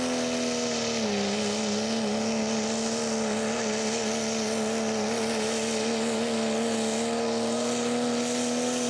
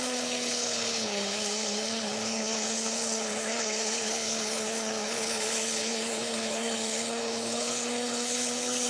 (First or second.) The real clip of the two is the first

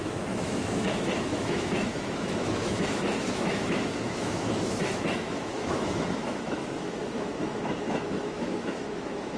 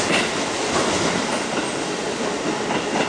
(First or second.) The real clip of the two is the second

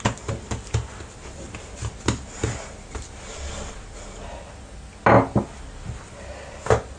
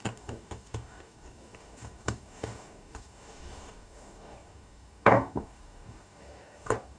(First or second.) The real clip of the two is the first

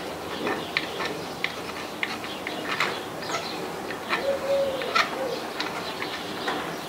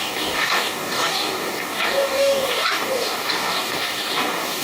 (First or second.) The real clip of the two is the first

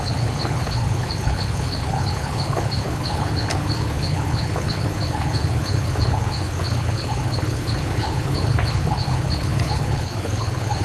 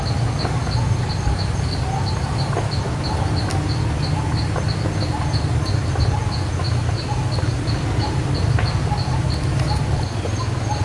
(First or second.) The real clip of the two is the second